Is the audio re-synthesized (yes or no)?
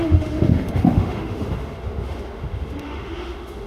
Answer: yes